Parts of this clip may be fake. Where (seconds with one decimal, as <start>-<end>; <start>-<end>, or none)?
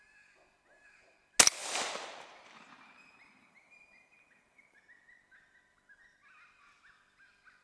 1.6-4.8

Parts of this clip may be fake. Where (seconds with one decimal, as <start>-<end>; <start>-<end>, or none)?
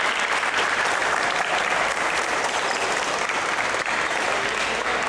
1.0-2.5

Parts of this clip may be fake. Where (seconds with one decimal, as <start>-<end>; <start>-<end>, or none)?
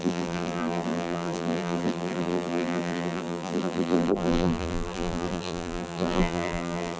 0.0-7.0